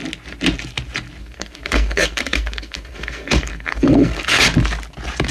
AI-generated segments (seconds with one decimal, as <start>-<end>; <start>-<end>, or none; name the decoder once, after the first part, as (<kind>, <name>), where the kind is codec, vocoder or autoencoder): 1.2-4.4 (codec, SNAC)